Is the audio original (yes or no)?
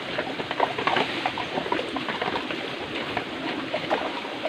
yes